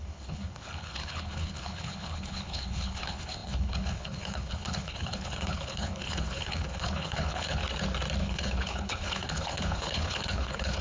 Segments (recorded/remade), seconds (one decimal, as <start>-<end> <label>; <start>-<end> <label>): 0.0-7.6 remade; 7.6-8.2 recorded; 8.2-10.8 remade